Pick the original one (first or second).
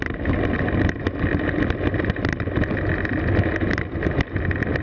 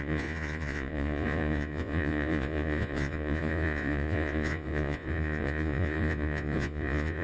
first